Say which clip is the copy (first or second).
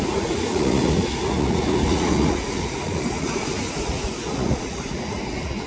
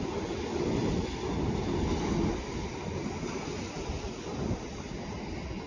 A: first